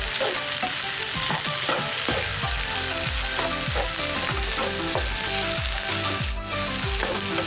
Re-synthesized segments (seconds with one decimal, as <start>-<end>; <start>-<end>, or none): none